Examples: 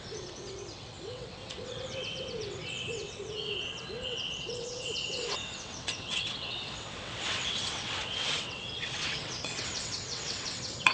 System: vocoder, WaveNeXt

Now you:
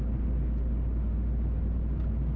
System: none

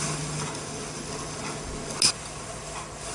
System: none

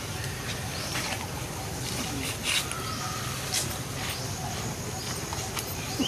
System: none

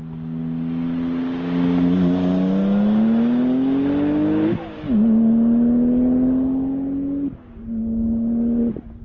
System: none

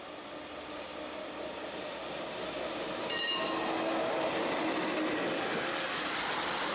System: none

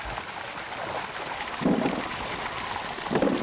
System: none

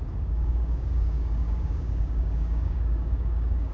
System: codec, DAC